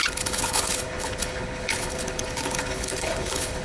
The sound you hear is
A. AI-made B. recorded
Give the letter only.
A